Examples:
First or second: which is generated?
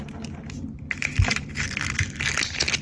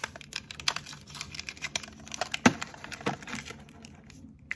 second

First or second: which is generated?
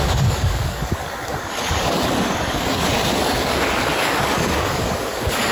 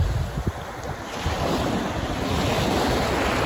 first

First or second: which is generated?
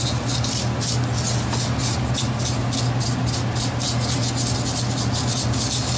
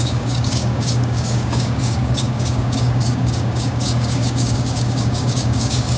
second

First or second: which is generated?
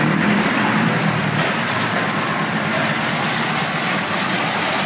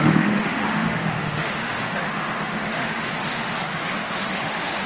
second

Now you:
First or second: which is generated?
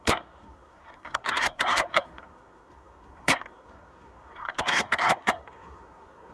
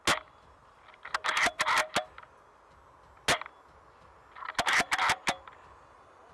first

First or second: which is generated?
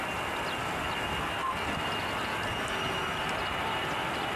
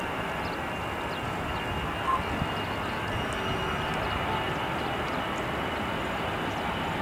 first